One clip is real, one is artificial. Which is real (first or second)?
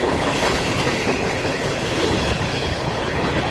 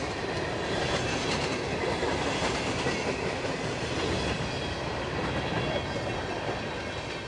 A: second